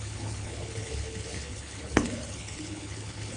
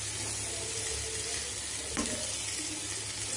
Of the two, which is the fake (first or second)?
first